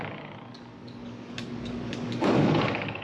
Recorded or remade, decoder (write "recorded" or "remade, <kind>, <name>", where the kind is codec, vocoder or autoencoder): remade, codec, DAC